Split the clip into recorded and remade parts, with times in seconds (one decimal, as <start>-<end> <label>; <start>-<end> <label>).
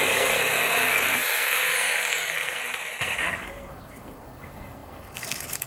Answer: 0.0-5.7 remade